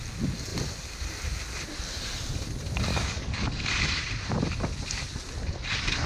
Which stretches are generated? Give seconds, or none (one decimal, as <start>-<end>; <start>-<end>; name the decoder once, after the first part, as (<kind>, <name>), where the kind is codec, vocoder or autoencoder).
2.9-3.8 (codec, DAC)

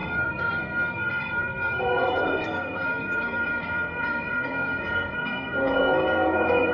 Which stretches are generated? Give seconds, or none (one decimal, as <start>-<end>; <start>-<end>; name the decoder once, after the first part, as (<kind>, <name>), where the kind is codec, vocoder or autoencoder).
0.0-6.7 (codec, SNAC)

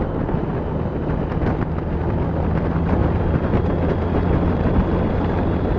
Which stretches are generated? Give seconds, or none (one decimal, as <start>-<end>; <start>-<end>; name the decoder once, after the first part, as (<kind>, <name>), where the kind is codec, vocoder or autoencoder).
none

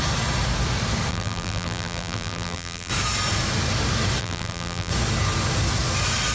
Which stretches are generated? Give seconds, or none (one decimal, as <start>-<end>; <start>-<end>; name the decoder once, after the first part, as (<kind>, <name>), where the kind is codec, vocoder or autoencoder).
1.1-2.9 (vocoder, BigVGAN v2); 4.2-4.9

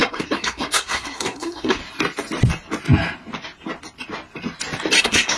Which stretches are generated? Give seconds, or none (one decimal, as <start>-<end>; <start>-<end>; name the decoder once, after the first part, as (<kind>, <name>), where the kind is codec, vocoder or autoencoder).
0.0-1.8 (codec, SNAC); 5.0-5.4

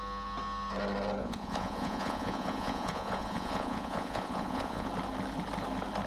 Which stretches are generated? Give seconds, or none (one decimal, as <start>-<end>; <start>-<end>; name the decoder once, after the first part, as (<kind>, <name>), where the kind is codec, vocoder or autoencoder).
1.2-4.9 (vocoder, Vocos)

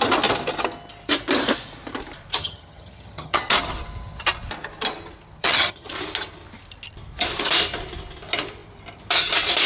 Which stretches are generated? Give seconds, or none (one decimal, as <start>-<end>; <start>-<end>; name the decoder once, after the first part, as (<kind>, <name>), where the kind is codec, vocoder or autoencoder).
2.4-3.5 (vocoder, HiFi-GAN); 5.4-5.9

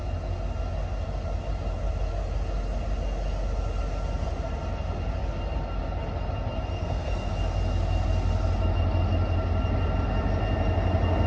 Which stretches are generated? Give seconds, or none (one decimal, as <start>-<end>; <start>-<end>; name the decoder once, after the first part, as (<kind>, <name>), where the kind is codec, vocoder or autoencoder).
6.7-7.3 (codec, SNAC)